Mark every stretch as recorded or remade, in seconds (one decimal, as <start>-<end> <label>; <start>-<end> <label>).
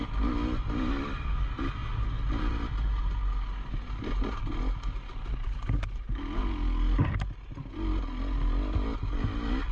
0.0-9.7 recorded